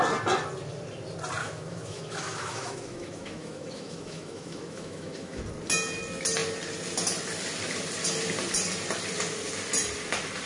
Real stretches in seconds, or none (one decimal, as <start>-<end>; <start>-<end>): 0.0-1.4; 5.4-10.5